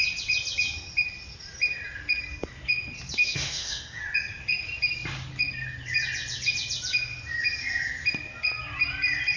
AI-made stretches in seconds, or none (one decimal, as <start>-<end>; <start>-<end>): 3.2-4.0